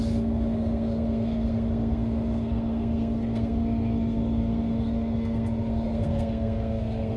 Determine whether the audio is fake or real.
fake